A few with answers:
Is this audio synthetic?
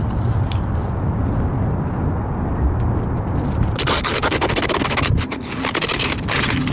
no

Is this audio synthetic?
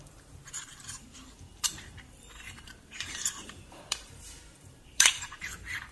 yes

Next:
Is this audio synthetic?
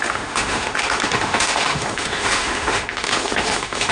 yes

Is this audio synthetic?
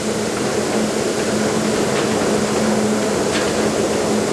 no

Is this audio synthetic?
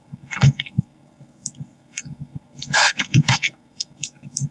yes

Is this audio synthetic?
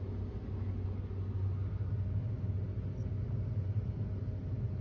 no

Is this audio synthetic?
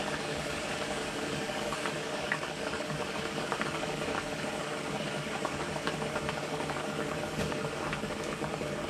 yes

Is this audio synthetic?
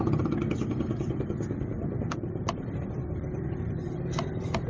no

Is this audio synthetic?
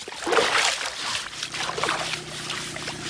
no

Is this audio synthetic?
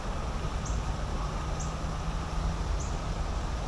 no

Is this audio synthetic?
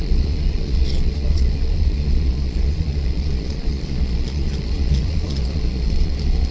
yes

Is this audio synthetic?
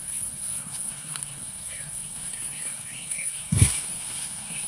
yes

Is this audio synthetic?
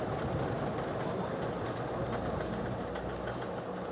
no